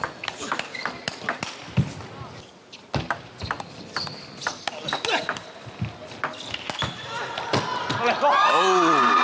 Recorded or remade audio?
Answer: recorded